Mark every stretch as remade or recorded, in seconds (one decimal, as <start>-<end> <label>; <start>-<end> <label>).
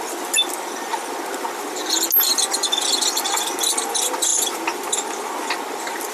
0.0-6.1 recorded